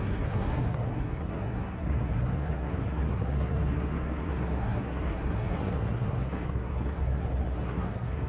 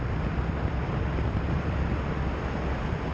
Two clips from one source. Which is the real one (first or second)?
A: second